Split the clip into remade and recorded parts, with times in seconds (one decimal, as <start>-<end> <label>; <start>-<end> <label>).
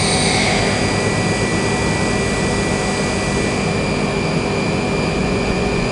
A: 0.0-5.2 recorded; 5.2-5.9 remade